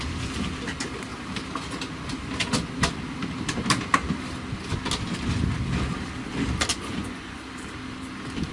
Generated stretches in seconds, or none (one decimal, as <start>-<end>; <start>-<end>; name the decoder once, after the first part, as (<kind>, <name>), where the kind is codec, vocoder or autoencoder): 6.7-7.4 (vocoder, Vocos)